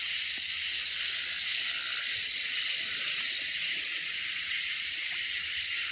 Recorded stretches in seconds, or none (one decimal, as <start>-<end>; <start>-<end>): 0.0-5.9